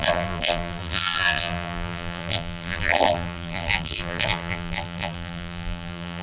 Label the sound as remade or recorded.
remade